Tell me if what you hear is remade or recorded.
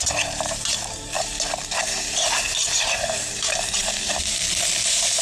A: remade